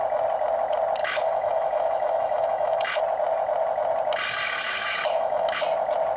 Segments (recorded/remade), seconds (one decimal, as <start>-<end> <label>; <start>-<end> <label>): 0.0-1.0 recorded; 1.0-3.0 remade; 3.0-4.4 recorded; 4.4-5.6 remade; 5.6-6.2 recorded